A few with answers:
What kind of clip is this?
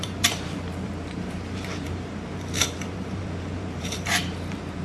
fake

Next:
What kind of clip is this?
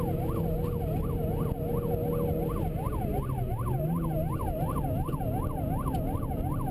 real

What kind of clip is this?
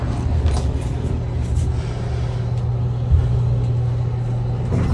real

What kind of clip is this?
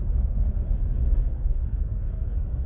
fake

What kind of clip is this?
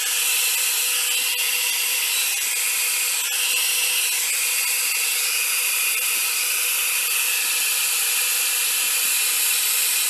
real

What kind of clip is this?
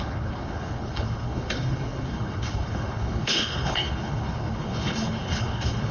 fake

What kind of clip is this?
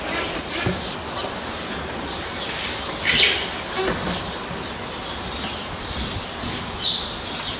real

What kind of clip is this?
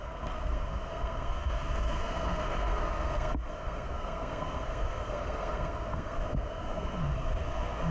fake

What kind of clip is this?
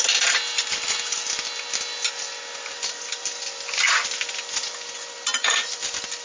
real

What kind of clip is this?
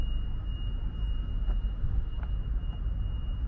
real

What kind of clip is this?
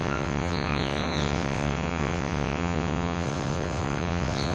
fake